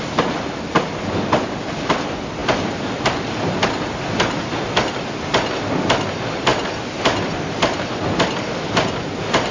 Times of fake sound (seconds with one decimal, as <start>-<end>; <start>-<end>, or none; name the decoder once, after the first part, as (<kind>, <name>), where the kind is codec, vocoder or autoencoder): 6.5-9.5 (vocoder, BigVGAN v2)